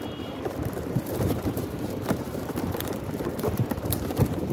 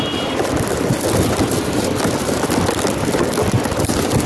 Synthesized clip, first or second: first